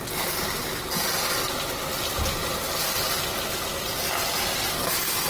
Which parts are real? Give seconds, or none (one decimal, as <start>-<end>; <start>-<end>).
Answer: 0.0-5.3